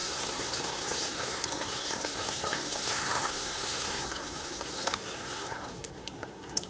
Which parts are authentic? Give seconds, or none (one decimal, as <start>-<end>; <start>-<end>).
none